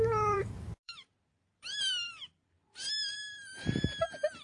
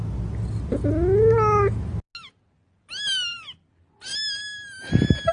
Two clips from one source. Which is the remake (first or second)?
first